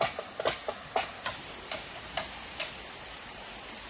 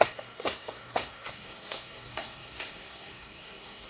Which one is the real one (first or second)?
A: first